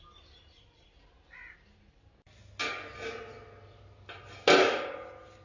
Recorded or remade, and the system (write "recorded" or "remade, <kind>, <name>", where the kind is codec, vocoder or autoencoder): recorded